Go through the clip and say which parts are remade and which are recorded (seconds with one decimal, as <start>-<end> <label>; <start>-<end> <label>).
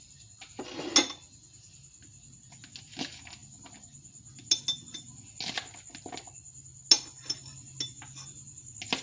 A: 0.0-9.0 recorded